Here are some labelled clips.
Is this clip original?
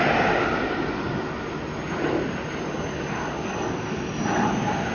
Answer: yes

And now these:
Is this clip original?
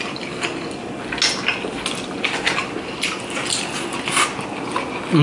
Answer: yes